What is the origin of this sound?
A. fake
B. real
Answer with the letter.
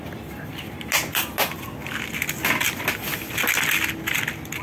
B